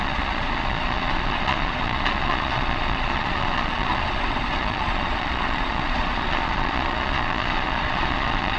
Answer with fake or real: fake